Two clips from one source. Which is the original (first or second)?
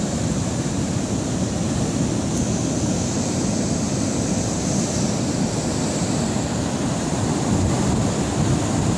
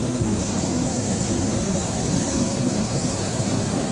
first